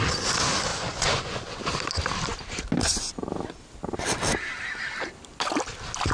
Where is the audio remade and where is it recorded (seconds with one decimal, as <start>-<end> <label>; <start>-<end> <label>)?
0.0-0.7 recorded; 0.7-1.6 remade; 1.6-6.1 recorded

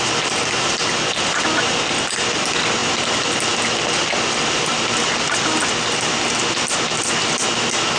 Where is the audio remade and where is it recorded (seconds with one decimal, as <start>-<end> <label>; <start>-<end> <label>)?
0.0-8.0 recorded

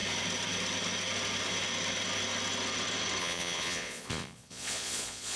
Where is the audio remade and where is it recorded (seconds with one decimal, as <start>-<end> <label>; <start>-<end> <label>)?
0.0-3.2 recorded; 3.2-5.4 remade